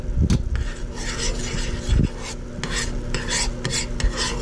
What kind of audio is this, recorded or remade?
recorded